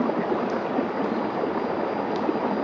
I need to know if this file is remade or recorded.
recorded